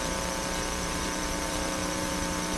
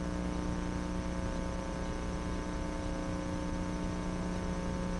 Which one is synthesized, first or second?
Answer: first